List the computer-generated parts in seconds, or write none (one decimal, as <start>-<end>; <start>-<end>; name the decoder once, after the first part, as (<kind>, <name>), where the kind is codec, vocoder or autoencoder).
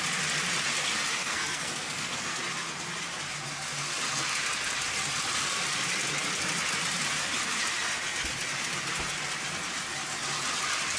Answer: 1.2-2.4 (codec, SNAC)